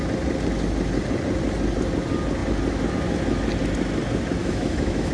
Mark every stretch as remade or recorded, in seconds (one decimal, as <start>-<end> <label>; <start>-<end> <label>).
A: 0.0-4.4 recorded; 4.4-5.1 remade